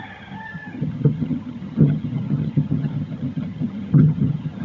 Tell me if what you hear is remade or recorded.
remade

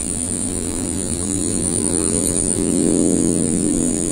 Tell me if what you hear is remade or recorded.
remade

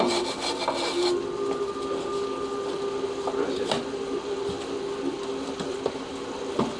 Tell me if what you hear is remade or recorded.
recorded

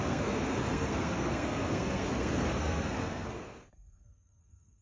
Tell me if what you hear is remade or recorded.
remade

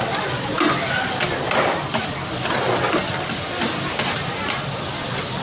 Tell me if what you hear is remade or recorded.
recorded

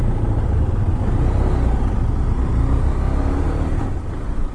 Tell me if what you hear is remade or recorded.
recorded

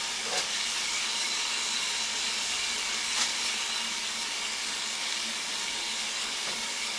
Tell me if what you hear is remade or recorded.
remade